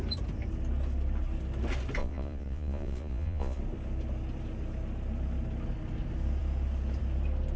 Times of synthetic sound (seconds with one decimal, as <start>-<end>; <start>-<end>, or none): 2.0-3.6